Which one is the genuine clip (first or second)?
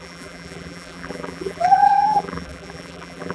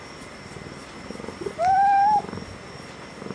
second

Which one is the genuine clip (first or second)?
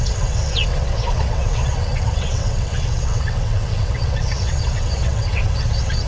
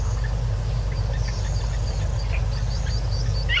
second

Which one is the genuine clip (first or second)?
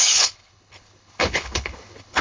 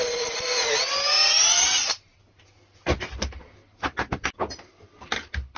second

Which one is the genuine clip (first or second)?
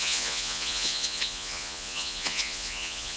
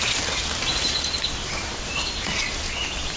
second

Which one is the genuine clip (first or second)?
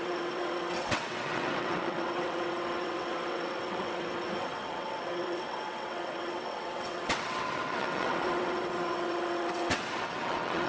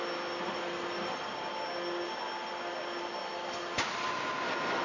second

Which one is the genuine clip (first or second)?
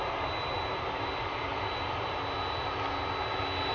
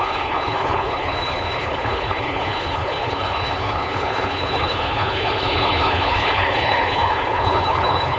first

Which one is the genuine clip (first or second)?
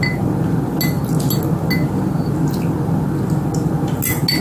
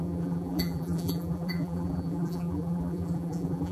first